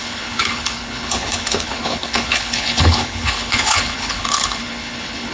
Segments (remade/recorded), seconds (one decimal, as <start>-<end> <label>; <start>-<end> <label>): 0.0-5.3 remade